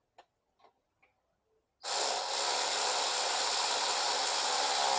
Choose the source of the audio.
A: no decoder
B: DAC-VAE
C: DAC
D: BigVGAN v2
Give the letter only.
A